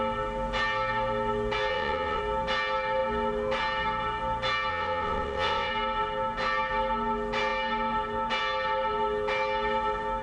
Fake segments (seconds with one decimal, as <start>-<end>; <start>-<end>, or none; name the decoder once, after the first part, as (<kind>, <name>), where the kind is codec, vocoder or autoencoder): 1.7-2.2 (vocoder, WaveNeXt); 4.7-5.7